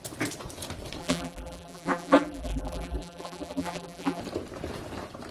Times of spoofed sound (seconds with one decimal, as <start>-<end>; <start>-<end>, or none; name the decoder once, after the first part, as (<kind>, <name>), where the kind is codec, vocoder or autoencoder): 1.0-4.2 (vocoder, BigVGAN v2)